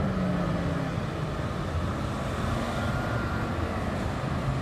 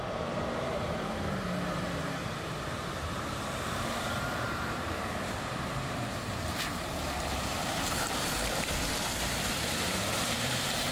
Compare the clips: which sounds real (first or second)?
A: first